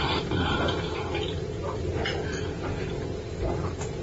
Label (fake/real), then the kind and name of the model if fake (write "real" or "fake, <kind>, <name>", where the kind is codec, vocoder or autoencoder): real